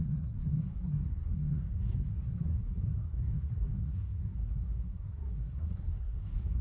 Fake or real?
fake